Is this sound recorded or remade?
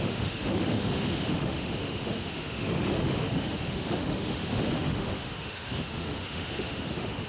remade